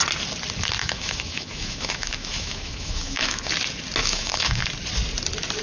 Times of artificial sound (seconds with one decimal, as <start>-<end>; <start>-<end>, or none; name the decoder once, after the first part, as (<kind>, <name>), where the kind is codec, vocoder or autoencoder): 0.8-3.5 (autoencoder, DAC-VAE); 4.0-4.6